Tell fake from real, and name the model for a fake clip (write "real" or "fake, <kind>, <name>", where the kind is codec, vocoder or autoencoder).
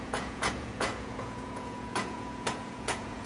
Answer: fake, vocoder, Vocos